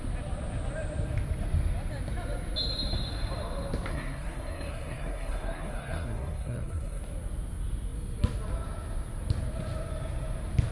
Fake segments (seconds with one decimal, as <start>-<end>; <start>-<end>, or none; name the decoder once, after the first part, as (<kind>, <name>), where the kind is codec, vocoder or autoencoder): 3.9-7.0 (codec, SNAC)